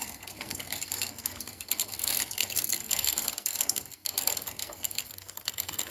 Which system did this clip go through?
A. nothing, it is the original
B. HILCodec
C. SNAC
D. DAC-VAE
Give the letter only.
C